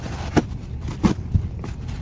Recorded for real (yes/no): yes